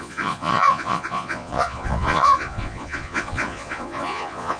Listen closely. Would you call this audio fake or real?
fake